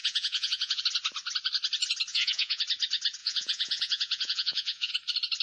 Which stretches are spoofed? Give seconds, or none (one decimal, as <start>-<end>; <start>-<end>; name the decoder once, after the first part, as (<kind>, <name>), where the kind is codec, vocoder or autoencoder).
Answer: 0.0-0.8 (vocoder, Vocos); 2.1-2.6; 3.2-4.9